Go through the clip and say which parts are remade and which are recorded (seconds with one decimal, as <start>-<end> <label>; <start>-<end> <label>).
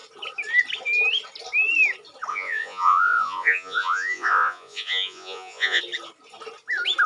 0.0-2.3 recorded; 2.3-5.8 remade; 5.8-7.1 recorded